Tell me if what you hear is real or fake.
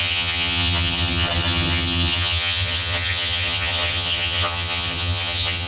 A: fake